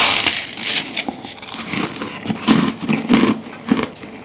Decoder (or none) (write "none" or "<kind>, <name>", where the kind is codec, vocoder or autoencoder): none